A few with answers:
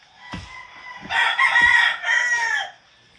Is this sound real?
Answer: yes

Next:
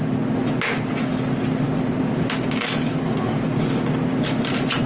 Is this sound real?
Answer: yes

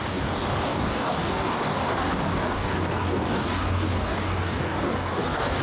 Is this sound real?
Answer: no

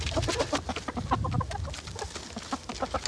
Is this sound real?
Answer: yes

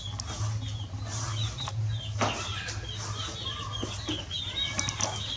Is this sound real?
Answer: yes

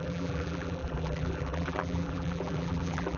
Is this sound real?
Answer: no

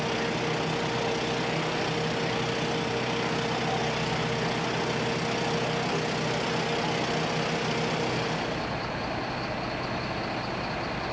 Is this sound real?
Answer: yes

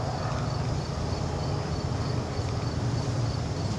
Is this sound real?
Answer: yes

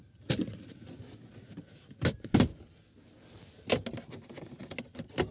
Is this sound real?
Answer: yes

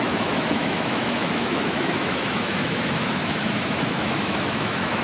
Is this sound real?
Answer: no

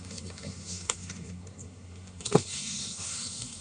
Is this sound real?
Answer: no